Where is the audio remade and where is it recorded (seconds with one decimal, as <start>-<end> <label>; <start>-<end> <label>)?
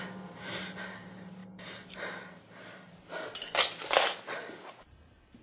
0.0-5.4 recorded